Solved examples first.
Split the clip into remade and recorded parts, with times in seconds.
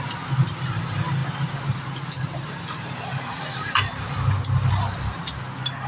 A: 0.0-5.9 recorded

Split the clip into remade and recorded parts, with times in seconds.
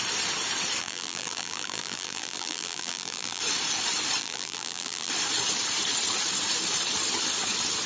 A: 0.0-0.8 recorded; 0.8-3.4 remade; 3.4-4.2 recorded; 4.2-5.1 remade; 5.1-7.9 recorded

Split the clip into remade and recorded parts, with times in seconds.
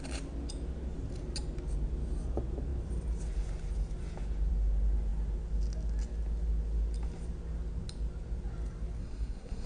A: 0.0-9.0 recorded; 9.0-9.7 remade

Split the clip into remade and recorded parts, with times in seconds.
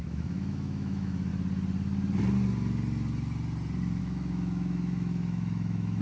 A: 0.0-1.3 remade; 1.3-4.0 recorded; 4.0-6.0 remade